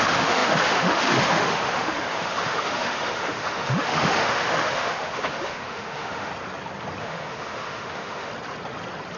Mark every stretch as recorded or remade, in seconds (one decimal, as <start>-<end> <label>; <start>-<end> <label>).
0.0-6.3 remade; 6.3-7.0 recorded; 7.0-8.3 remade; 8.3-9.2 recorded